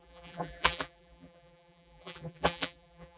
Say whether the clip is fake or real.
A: fake